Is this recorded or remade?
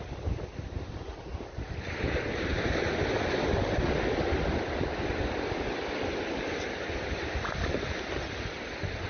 recorded